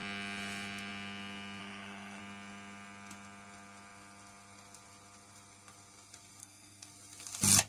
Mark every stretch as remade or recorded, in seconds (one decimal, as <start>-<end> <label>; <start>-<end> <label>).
0.0-1.6 recorded; 1.6-2.2 remade; 2.2-6.4 recorded; 6.4-6.9 remade; 6.9-7.7 recorded